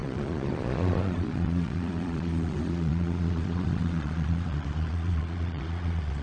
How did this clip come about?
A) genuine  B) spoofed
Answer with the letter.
B